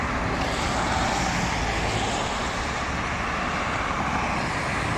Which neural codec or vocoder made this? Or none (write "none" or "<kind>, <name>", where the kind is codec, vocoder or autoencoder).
none